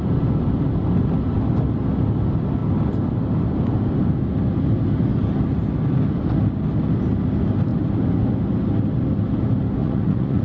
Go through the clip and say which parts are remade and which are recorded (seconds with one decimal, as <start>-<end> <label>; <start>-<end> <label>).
0.0-9.8 recorded; 9.8-10.4 remade